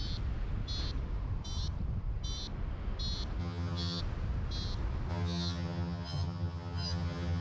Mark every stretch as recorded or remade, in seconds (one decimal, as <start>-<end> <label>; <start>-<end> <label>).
0.0-3.4 recorded; 3.4-4.0 remade; 4.0-5.1 recorded; 5.1-7.4 remade